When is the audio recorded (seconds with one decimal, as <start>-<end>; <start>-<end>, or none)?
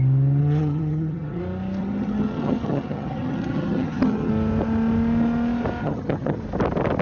0.0-0.4; 1.4-1.8; 4.3-5.8; 6.4-7.0